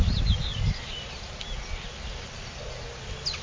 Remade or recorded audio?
recorded